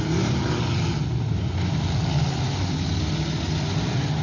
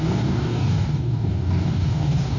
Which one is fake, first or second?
second